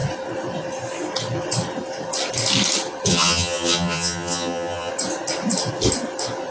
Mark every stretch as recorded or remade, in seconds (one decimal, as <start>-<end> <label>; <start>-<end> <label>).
0.0-3.1 recorded; 3.1-4.9 remade; 4.9-6.5 recorded